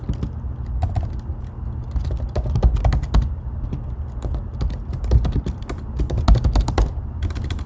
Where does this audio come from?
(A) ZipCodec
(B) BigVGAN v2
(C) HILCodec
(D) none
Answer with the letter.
D